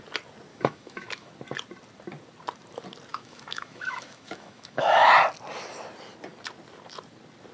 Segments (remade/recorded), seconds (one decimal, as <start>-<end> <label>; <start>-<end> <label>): 0.0-0.5 recorded; 0.5-1.3 remade; 1.3-3.1 recorded; 3.1-5.1 remade; 5.1-7.5 recorded